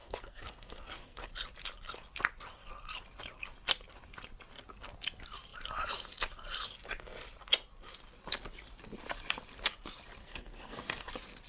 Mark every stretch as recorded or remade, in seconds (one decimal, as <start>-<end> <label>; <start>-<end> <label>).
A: 0.0-1.3 remade; 1.3-10.2 recorded; 10.2-11.1 remade; 11.1-11.5 recorded